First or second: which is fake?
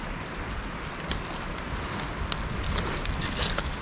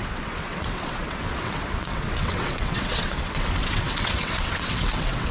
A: second